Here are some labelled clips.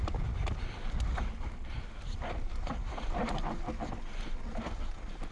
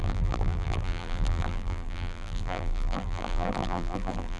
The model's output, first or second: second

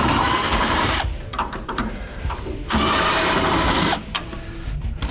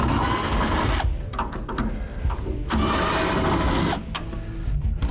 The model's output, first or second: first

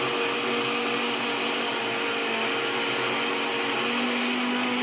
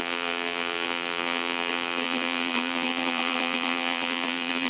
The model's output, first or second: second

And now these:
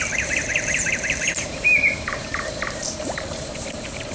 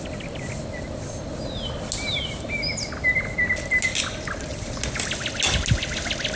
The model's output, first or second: first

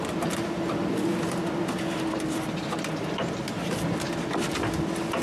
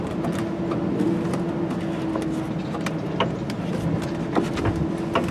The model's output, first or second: first